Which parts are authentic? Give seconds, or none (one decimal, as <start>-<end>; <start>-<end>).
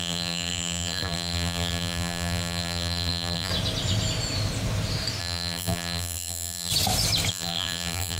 3.5-5.2; 6.7-7.3